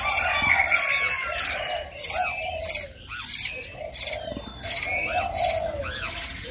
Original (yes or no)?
yes